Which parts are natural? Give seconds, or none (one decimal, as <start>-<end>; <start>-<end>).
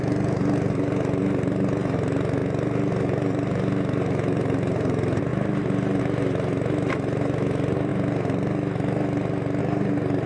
2.4-2.9; 7.9-9.6